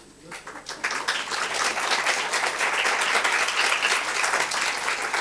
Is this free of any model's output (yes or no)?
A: yes